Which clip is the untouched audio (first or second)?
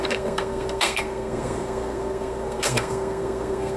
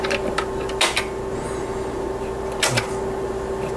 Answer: second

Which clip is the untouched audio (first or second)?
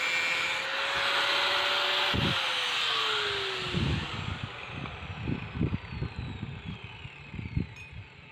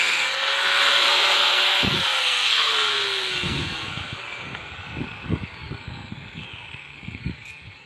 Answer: first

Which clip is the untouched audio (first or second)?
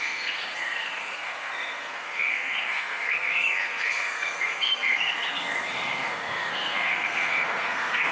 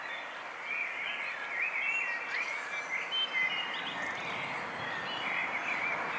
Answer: second